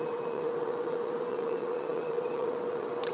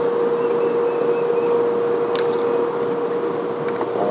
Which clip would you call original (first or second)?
second